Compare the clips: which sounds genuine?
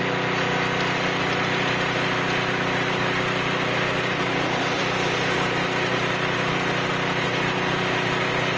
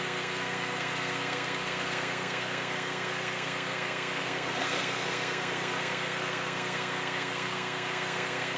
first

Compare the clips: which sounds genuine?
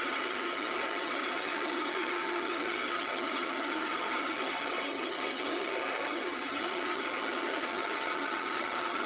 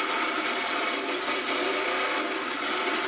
second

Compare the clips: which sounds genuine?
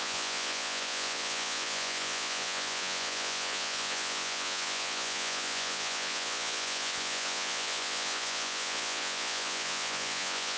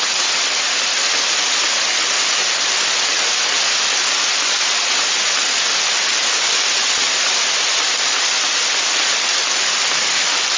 second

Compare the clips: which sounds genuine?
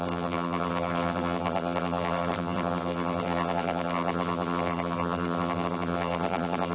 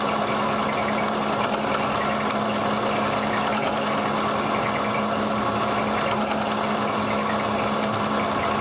second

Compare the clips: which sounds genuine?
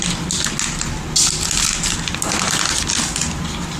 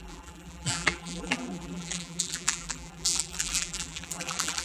first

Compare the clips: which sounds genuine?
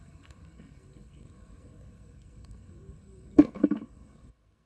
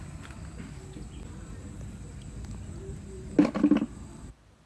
second